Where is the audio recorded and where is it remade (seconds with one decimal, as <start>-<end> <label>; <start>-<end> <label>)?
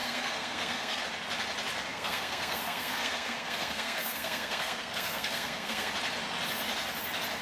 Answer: 0.0-1.0 remade; 1.0-1.9 recorded; 1.9-5.9 remade; 5.9-7.4 recorded